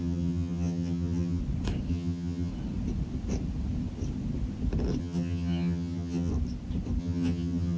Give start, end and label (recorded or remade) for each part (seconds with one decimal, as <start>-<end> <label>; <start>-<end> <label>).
0.0-1.4 remade; 1.4-1.9 recorded; 1.9-2.5 remade; 2.5-5.0 recorded; 5.0-6.3 remade; 6.3-7.0 recorded; 7.0-7.8 remade